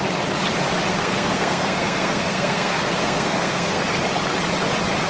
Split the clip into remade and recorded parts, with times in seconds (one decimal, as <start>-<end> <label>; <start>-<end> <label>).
0.0-0.9 recorded; 0.9-3.8 remade; 3.8-5.1 recorded